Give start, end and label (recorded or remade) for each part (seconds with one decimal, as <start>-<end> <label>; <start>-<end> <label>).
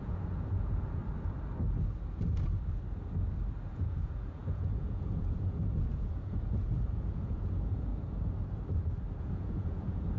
0.0-1.0 remade; 1.0-3.7 recorded; 3.7-7.9 remade; 7.9-9.2 recorded; 9.2-10.2 remade